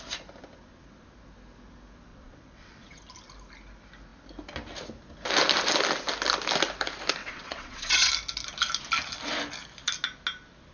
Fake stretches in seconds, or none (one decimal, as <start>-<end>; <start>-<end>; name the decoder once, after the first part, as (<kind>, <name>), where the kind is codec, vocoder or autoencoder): 2.1-3.0 (vocoder, WaveNeXt); 7.2-8.1